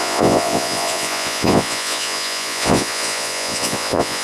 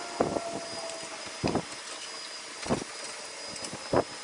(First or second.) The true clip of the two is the second